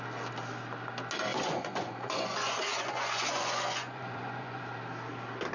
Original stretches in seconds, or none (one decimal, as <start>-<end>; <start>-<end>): 0.0-1.3; 4.6-5.5